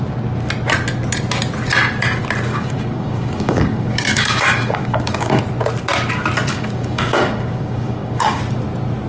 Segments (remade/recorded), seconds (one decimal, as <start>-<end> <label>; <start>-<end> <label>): 0.0-2.5 recorded; 2.5-5.4 remade; 5.4-6.5 recorded; 6.5-8.4 remade; 8.4-9.1 recorded